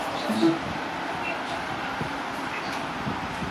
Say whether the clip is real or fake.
fake